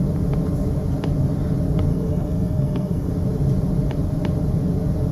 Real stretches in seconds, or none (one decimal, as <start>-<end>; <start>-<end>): 0.0-1.9; 3.1-5.1